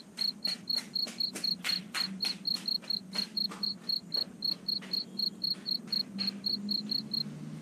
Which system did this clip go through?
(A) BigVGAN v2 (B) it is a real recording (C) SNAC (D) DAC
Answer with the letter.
B